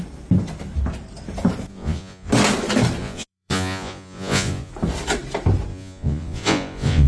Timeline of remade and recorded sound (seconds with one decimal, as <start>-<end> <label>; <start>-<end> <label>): 0.0-1.7 recorded; 1.7-2.3 remade; 2.3-3.0 recorded; 3.0-4.7 remade; 4.7-5.7 recorded; 5.7-7.1 remade